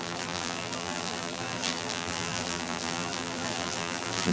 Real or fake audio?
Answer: fake